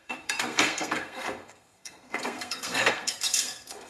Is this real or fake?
fake